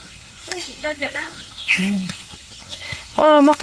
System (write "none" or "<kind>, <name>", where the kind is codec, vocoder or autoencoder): codec, SNAC